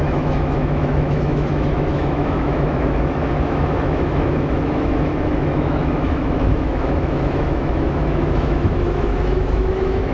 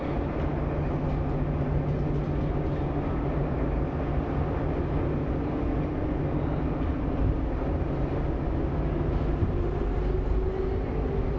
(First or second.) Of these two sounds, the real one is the second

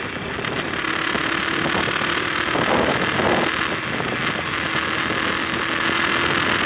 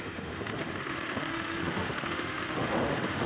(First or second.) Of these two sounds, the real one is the first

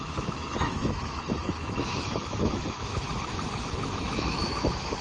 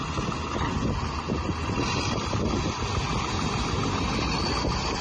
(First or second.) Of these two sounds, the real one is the second